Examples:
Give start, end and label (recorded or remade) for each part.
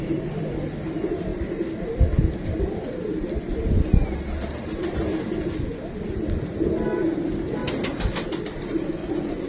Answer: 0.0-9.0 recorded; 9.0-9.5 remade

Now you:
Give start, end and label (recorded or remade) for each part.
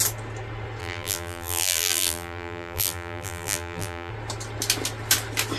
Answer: 0.0-0.8 recorded; 0.8-4.1 remade; 4.1-5.6 recorded